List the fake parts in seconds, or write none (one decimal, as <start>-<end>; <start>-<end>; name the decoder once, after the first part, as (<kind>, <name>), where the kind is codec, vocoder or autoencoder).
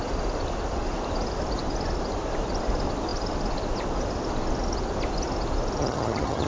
5.8-6.5 (vocoder, HiFi-GAN)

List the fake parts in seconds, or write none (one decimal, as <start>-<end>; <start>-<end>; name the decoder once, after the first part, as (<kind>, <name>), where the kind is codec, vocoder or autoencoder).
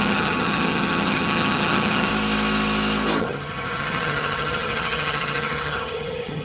0.0-2.1 (vocoder, HiFi-GAN); 3.2-6.4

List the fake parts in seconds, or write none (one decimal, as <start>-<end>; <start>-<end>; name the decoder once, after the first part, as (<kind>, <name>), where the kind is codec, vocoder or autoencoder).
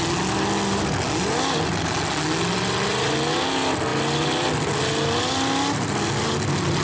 none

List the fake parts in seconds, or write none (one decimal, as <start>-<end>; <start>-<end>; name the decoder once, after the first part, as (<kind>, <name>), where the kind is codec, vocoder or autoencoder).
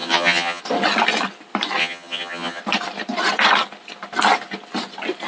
0.0-0.6 (vocoder, HiFi-GAN); 1.8-2.6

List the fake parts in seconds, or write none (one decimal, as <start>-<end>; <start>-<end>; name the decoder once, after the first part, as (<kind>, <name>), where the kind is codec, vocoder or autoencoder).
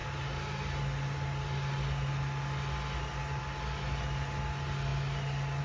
none